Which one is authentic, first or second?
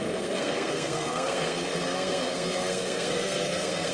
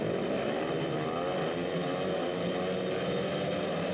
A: second